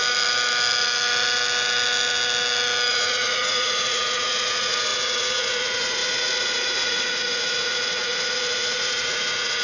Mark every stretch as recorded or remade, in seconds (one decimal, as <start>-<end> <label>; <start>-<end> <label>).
0.0-2.9 recorded; 2.9-9.6 remade